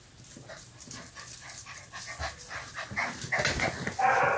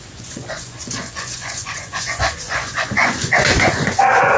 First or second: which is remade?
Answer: second